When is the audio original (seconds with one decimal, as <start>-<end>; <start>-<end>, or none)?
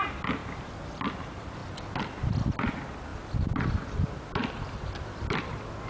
0.0-0.4; 1.1-5.9